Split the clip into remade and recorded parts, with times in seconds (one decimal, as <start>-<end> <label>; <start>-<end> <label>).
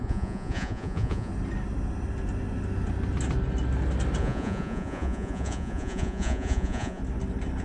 0.0-1.3 remade; 1.3-4.2 recorded; 4.2-7.0 remade; 7.0-7.6 recorded